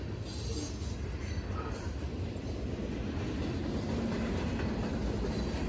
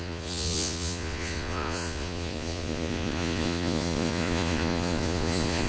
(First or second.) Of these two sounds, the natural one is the first